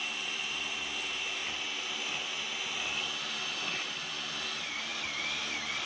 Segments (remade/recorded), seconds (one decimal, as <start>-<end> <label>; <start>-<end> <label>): 0.0-1.4 remade; 1.4-4.4 recorded; 4.4-4.9 remade; 4.9-5.4 recorded; 5.4-5.9 remade